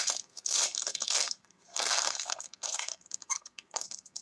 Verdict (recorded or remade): remade